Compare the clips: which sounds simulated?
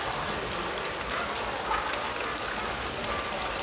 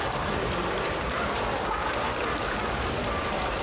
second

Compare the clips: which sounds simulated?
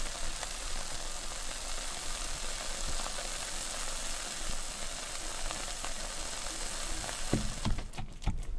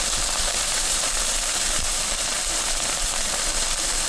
second